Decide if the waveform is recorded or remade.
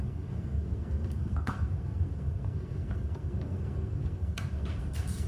remade